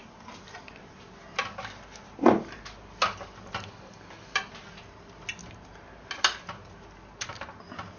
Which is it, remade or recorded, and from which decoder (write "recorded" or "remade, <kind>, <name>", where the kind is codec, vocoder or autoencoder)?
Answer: recorded